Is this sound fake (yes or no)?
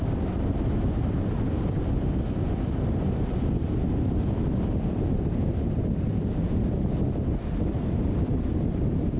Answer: yes